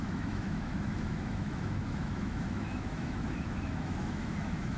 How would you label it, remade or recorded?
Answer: remade